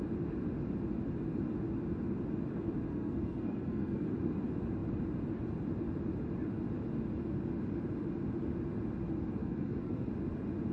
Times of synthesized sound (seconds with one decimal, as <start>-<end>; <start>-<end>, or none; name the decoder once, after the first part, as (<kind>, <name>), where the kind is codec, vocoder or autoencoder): 2.9-4.1 (codec, SNAC); 9.4-10.1